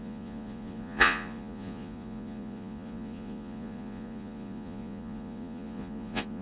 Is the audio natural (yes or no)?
no